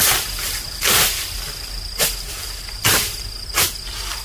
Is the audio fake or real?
real